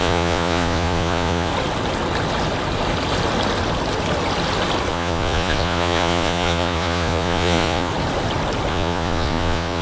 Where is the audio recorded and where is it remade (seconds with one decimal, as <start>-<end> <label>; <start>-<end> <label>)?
0.0-1.5 remade; 1.5-4.9 recorded; 4.9-7.9 remade; 7.9-8.7 recorded; 8.7-9.8 remade